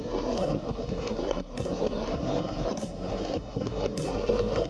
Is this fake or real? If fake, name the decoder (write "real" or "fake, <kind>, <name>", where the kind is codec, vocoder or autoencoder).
fake, codec, SNAC